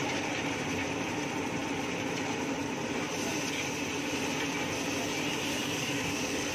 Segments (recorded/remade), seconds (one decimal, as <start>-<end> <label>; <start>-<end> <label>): 0.0-5.6 recorded; 5.6-6.5 remade